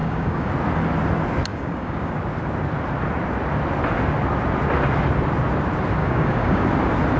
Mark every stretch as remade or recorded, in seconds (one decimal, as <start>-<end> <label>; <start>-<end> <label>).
0.0-0.5 remade; 0.5-1.5 recorded; 1.5-2.1 remade; 2.1-6.0 recorded; 6.0-6.6 remade; 6.6-7.2 recorded

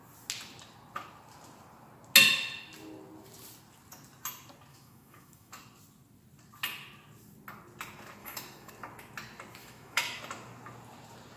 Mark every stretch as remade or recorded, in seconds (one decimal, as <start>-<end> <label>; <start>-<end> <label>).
0.0-4.7 recorded; 4.7-5.5 remade; 5.5-8.2 recorded; 8.2-8.7 remade; 8.7-9.6 recorded; 9.6-10.2 remade; 10.2-11.4 recorded

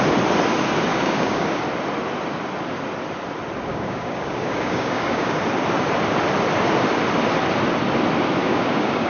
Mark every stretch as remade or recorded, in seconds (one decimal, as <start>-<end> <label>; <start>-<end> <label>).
0.0-0.9 recorded; 0.9-1.6 remade; 1.6-3.7 recorded; 3.7-5.4 remade; 5.4-8.4 recorded; 8.4-9.1 remade

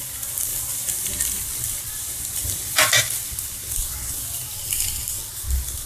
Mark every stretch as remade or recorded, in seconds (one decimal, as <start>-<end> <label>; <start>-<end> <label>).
0.0-0.5 recorded; 0.5-3.0 remade; 3.0-5.9 recorded

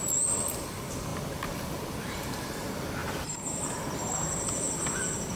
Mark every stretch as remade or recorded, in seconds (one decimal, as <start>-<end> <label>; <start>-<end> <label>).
0.0-3.0 recorded; 3.0-4.5 remade; 4.5-5.4 recorded

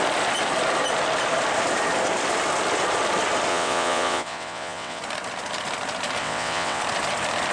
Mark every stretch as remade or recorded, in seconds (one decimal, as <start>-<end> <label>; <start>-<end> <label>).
0.0-3.5 recorded; 3.5-5.0 remade; 5.0-6.2 recorded; 6.2-6.8 remade; 6.8-7.5 recorded